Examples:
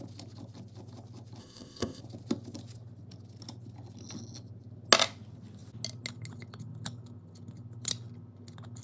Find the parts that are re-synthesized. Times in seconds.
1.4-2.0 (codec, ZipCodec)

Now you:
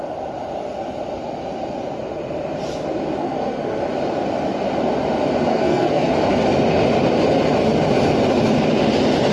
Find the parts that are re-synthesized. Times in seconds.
3.2-3.8 (codec, SNAC); 5.5-6.1

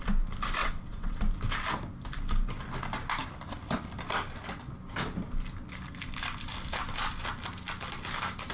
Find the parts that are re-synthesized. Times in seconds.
0.6-1.2 (vocoder, WaveNeXt)

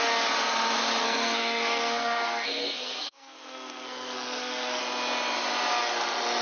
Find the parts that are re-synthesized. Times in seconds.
1.0-4.8 (codec, SNAC)